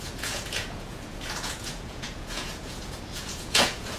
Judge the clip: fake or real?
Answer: fake